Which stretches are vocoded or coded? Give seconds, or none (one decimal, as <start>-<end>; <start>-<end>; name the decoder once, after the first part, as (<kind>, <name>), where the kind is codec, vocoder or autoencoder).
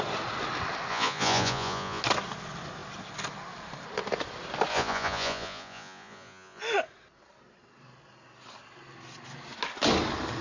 0.9-2.0 (vocoder, Vocos); 4.7-6.6